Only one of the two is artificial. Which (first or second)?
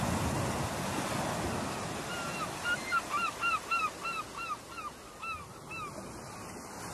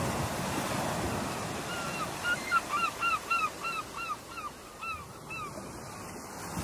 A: second